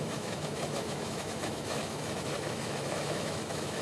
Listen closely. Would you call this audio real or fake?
fake